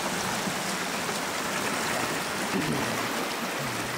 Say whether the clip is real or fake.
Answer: real